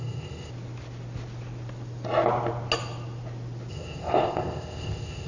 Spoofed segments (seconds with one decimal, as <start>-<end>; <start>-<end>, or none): 0.0-0.5; 3.7-5.3